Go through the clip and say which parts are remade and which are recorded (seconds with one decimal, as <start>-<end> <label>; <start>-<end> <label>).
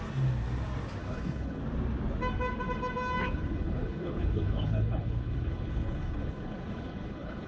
0.0-1.0 recorded; 1.0-1.6 remade; 1.6-3.2 recorded; 3.2-7.5 remade